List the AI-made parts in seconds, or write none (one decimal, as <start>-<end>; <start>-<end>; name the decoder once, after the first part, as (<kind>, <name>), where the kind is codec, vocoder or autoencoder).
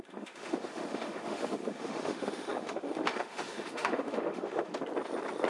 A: 0.0-4.7 (autoencoder, DAC-VAE)